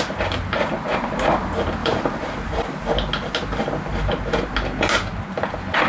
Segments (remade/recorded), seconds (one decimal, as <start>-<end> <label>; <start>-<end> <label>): 0.0-1.8 recorded; 1.8-2.9 remade; 2.9-5.9 recorded